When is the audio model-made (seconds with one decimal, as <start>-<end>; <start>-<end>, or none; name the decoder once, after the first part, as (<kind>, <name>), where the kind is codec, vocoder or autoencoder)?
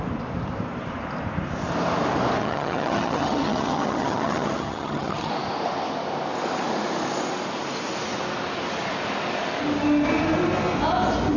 2.4-5.3 (vocoder, HiFi-GAN)